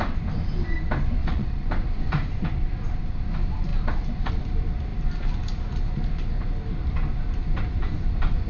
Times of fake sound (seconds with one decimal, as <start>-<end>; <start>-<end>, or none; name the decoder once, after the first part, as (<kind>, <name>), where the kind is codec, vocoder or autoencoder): 1.2-1.7 (vocoder, Vocos)